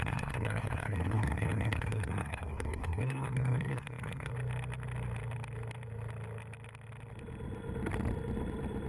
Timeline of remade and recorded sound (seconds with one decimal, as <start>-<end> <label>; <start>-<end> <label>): 0.0-4.3 remade; 4.3-8.9 recorded